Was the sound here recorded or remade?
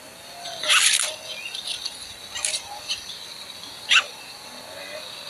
recorded